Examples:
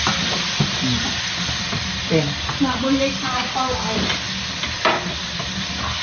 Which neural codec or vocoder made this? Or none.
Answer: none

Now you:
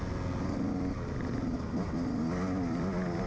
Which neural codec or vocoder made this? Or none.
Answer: none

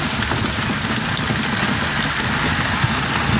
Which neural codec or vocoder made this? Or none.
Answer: none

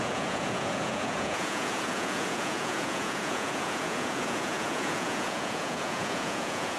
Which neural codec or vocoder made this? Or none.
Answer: vocoder, Vocos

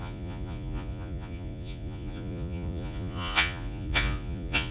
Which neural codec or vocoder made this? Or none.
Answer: vocoder, Vocos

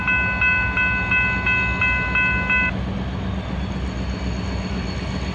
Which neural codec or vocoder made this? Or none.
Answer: none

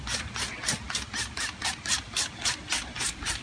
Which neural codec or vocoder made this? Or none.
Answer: none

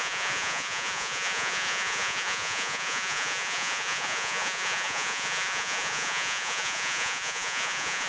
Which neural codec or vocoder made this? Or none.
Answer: vocoder, Vocos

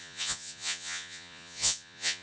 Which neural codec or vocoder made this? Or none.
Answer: vocoder, Vocos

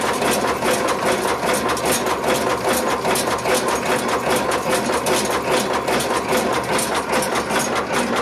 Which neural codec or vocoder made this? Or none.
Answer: none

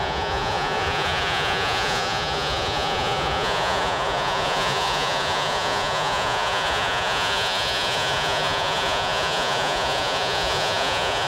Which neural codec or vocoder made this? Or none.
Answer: vocoder, Vocos